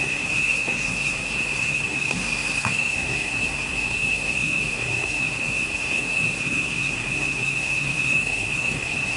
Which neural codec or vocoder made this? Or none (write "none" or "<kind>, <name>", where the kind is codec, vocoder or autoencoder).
codec, SNAC